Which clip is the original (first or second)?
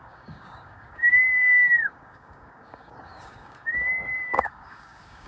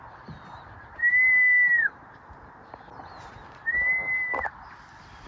second